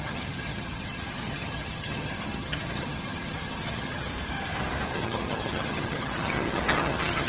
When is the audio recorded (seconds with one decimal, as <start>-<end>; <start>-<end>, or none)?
4.1-4.9